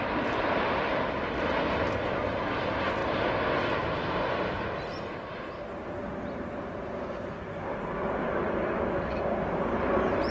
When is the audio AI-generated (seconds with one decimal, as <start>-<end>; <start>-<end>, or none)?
none